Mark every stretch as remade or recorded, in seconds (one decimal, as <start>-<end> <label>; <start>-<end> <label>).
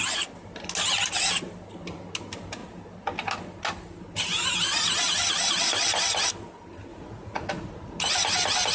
0.0-6.9 recorded; 6.9-8.0 remade; 8.0-8.7 recorded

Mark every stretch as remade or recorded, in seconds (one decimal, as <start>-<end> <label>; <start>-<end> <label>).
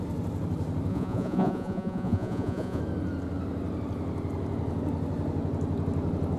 0.0-0.9 recorded; 0.9-2.8 remade; 2.8-6.4 recorded